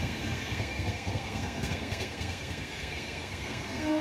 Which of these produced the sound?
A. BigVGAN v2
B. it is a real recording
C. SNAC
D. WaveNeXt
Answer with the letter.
C